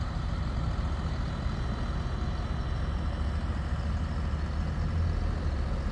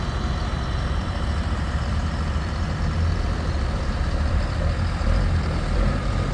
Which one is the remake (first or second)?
second